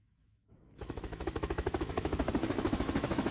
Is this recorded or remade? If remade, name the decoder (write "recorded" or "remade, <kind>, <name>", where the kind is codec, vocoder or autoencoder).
remade, autoencoder, DAC-VAE